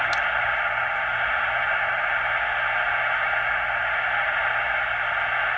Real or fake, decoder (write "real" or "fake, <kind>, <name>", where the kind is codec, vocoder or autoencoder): real